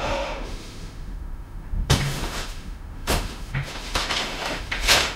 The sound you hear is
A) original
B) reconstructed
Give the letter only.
B